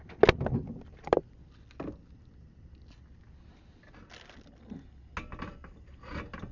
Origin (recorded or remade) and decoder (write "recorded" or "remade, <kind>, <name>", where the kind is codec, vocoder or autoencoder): recorded